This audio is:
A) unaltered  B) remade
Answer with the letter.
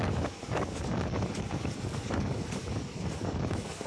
B